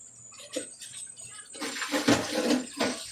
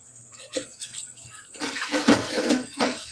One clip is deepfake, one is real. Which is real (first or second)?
first